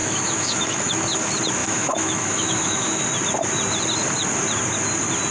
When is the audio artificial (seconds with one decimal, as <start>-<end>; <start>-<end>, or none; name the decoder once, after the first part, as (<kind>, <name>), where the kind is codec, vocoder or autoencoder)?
0.0-0.9 (autoencoder, DAC-VAE); 1.6-3.0